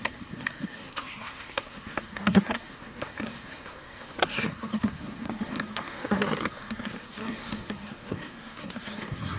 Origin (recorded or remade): remade